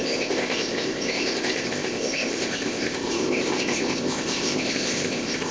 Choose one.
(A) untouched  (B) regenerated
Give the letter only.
B